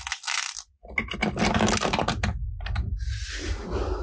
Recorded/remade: recorded